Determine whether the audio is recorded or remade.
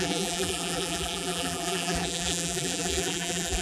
remade